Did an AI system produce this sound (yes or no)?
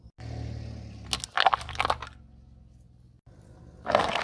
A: no